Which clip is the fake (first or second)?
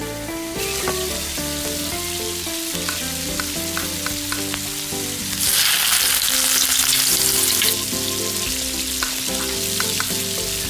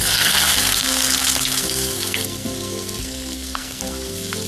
second